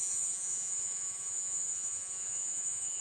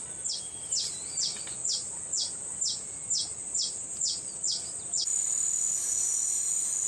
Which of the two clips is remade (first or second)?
first